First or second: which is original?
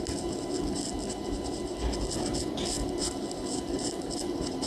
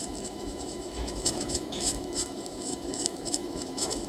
first